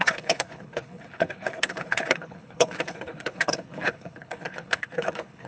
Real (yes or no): no